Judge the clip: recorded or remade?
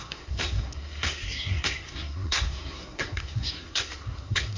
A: remade